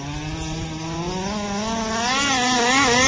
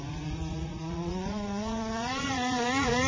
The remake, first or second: second